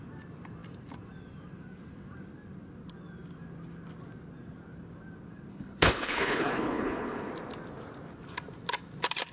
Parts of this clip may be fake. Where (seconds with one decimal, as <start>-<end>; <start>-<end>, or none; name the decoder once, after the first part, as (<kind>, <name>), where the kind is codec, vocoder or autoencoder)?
5.5-7.3 (codec, HILCodec)